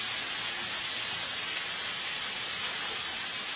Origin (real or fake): real